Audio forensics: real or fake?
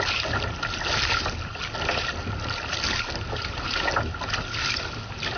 real